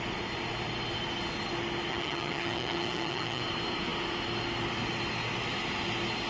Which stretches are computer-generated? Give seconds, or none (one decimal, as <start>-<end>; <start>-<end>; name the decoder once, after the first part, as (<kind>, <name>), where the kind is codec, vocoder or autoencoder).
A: 1.9-3.4 (vocoder, HiFi-GAN)